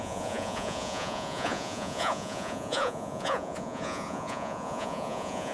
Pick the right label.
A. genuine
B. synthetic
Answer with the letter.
B